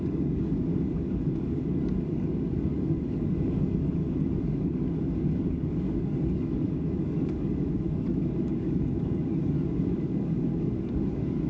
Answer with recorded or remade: remade